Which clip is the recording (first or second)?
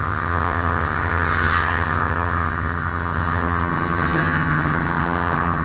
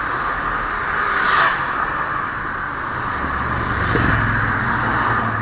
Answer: second